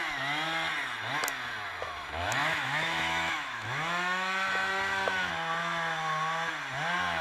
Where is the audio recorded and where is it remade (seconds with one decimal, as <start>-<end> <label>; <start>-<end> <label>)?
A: 0.0-2.4 recorded; 2.4-5.3 remade; 5.3-7.2 recorded